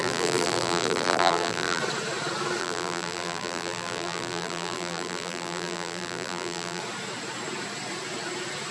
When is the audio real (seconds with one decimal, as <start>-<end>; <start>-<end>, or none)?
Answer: 1.8-2.6; 6.8-8.7